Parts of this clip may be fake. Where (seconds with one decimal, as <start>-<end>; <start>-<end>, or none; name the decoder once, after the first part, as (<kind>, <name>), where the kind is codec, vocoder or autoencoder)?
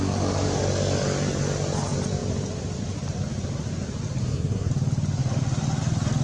4.2-4.7 (codec, SNAC)